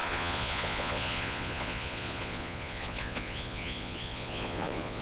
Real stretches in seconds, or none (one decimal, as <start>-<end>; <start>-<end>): none